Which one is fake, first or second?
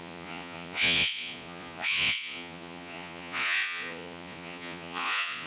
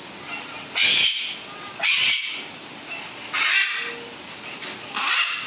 first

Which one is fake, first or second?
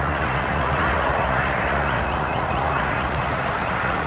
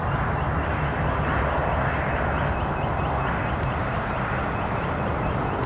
first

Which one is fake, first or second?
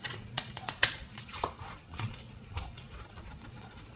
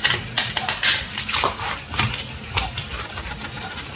first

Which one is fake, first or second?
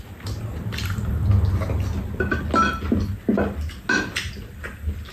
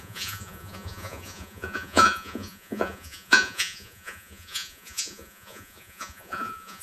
second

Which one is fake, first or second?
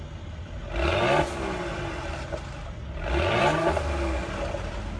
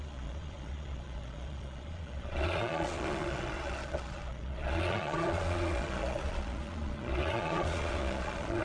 second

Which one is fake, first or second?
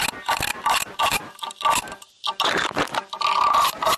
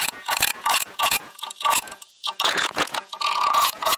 second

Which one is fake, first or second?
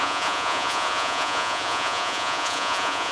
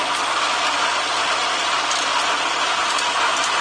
first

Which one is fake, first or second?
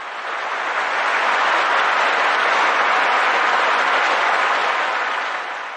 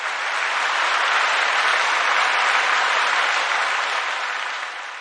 first